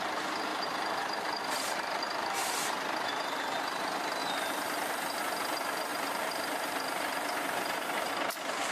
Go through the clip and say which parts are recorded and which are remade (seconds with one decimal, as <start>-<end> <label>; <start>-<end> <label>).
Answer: 0.0-0.5 recorded; 0.5-3.8 remade; 3.8-4.2 recorded; 4.2-5.2 remade; 5.2-5.9 recorded; 5.9-8.1 remade; 8.1-8.7 recorded

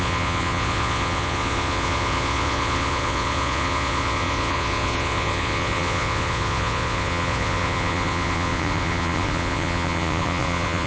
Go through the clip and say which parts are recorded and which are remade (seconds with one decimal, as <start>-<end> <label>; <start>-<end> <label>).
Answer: 0.0-10.9 remade

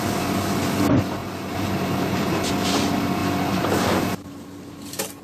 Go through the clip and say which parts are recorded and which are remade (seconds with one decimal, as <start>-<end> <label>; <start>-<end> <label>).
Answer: 0.0-1.2 recorded; 1.2-2.4 remade; 2.4-5.2 recorded

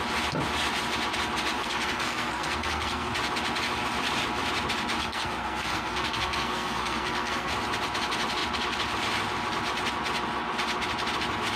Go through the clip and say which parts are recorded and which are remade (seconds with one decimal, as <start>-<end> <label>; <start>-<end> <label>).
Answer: 0.0-1.6 recorded; 1.6-3.1 remade; 3.1-5.0 recorded; 5.0-7.5 remade; 7.5-11.6 recorded

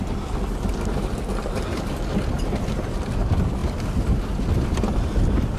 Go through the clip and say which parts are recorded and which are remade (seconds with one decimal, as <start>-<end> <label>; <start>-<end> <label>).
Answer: 0.0-5.6 recorded

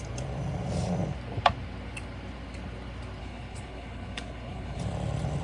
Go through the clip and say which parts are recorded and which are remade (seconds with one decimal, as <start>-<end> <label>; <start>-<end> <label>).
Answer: 0.0-3.2 recorded; 3.2-4.8 remade; 4.8-5.4 recorded